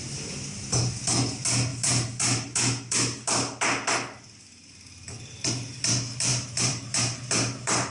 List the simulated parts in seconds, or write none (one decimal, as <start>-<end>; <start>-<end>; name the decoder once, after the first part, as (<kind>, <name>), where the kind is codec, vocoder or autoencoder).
1.7-3.6 (vocoder, BigVGAN v2); 6.3-7.9